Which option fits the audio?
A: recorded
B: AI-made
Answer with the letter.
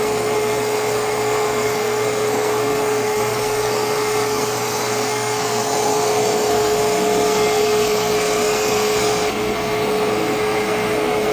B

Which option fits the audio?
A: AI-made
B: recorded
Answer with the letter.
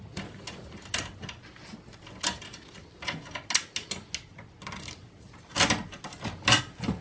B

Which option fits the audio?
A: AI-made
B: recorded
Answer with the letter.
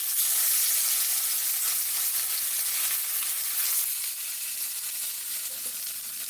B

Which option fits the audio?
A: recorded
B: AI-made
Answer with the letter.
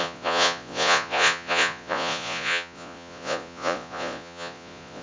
B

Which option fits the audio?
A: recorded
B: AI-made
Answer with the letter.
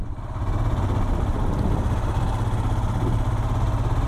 A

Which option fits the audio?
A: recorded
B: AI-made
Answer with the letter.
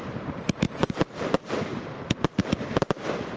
B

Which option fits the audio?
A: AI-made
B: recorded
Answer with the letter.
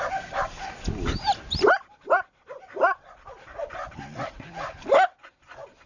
B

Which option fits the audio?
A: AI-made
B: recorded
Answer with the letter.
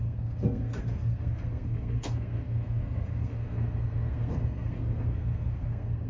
A